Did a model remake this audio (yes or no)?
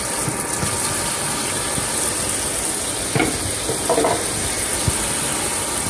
no